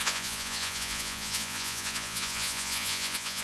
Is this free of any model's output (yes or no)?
no